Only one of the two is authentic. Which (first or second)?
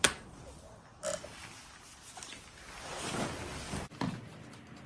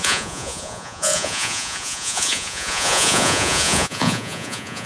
first